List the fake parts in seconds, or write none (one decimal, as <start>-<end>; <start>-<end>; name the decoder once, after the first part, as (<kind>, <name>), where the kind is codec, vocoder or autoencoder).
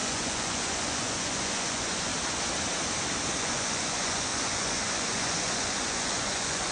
0.0-2.1 (vocoder, Vocos); 3.4-6.7